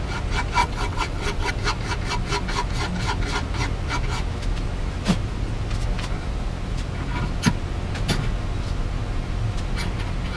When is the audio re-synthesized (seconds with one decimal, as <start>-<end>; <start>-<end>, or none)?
0.6-1.5